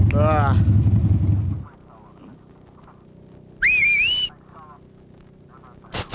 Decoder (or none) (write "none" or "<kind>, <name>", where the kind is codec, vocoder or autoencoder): none